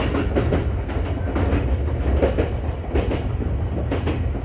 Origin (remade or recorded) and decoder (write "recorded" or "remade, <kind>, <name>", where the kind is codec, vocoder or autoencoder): recorded